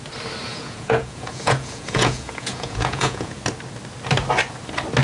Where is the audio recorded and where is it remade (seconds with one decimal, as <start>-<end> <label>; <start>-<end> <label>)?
0.0-0.5 recorded; 0.5-3.4 remade; 3.4-5.0 recorded

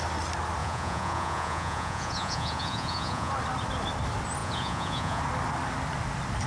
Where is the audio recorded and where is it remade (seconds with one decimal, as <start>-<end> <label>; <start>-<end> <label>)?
0.0-0.6 recorded; 0.6-3.3 remade; 3.3-4.4 recorded; 4.4-5.2 remade; 5.2-6.5 recorded

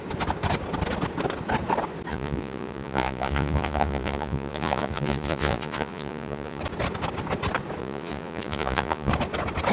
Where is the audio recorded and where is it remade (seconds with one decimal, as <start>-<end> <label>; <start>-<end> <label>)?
0.0-2.1 recorded; 2.1-6.6 remade; 6.6-7.8 recorded; 7.8-9.1 remade; 9.1-9.7 recorded